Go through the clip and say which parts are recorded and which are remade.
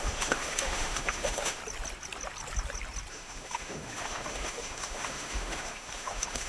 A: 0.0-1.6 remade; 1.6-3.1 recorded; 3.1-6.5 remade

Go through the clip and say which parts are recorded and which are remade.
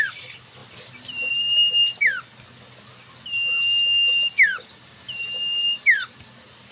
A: 0.0-6.7 recorded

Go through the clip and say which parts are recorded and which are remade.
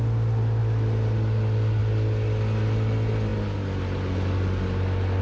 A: 0.0-5.2 recorded